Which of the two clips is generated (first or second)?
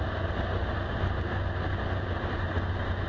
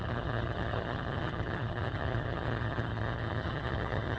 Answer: second